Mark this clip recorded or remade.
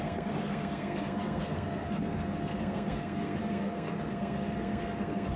remade